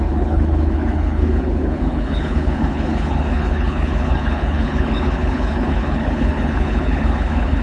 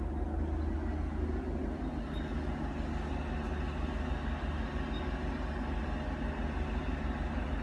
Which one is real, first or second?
second